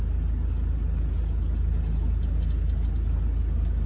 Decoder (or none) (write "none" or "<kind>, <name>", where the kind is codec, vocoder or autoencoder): none